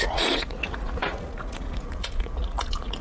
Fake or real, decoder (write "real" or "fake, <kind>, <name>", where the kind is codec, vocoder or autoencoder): fake, vocoder, Vocos